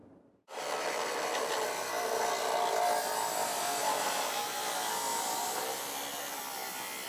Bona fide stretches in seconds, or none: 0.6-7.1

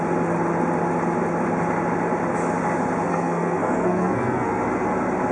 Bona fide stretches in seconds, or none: 0.0-3.1; 4.6-5.3

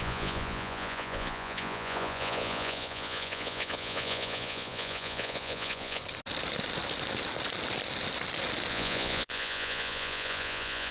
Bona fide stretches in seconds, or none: 6.0-8.7

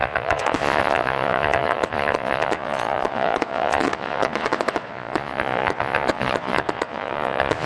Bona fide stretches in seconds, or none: none

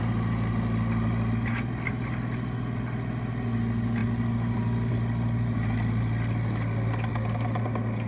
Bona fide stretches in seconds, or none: 0.0-4.0; 4.9-8.1

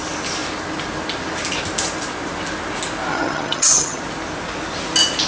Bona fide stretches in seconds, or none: 0.0-3.1; 4.0-5.3

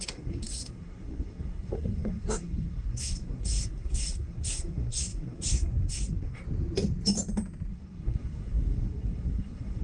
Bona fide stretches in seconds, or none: 6.4-7.7